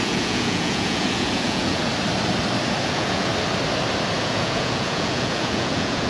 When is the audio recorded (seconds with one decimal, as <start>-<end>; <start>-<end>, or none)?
1.9-2.8; 3.3-4.2